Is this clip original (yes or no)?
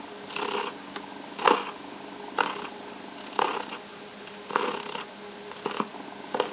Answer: yes